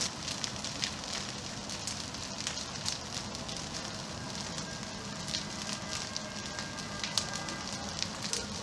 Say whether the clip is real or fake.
real